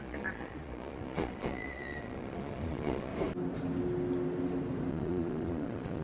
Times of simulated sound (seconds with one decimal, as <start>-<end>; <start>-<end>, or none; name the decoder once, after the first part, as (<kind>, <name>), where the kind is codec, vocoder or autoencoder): 0.0-3.1 (vocoder, Vocos); 4.9-6.0